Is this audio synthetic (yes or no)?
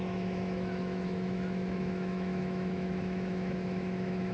yes